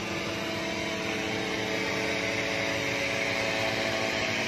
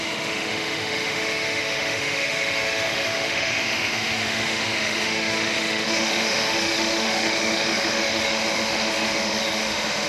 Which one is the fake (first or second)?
second